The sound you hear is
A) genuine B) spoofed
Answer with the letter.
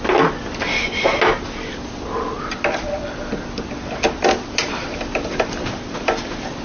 A